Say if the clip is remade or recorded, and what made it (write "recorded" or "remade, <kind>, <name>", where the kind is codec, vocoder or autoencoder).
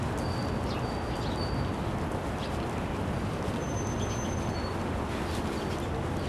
recorded